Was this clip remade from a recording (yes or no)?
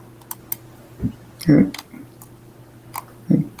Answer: no